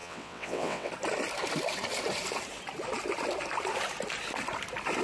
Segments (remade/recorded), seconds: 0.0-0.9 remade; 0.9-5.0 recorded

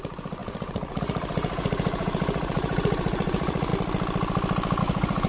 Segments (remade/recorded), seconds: 0.0-3.7 remade; 3.7-4.8 recorded; 4.8-5.3 remade

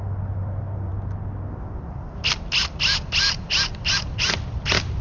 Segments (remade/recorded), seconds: 0.0-5.0 recorded

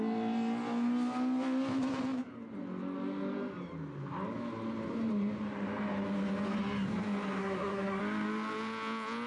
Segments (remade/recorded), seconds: 0.0-7.4 recorded; 7.4-8.0 remade; 8.0-9.3 recorded

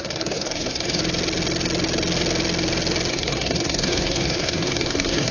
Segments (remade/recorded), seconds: 0.0-1.0 remade; 1.0-3.1 recorded; 3.1-5.3 remade